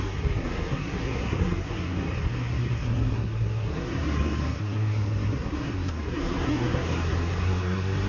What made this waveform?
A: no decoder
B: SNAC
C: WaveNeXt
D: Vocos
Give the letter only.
B